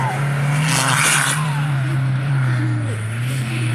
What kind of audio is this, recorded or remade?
recorded